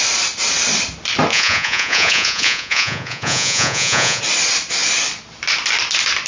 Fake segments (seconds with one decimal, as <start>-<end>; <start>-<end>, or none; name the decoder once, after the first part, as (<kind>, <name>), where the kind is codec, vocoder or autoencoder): 1.3-4.2 (vocoder, Vocos)